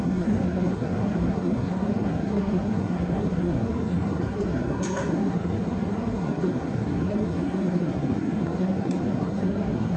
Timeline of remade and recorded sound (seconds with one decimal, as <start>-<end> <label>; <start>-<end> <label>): 0.0-10.0 remade